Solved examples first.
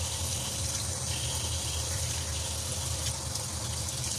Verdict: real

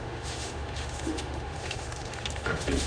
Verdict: fake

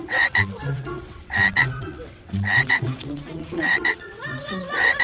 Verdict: fake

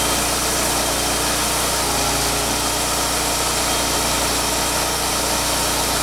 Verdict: real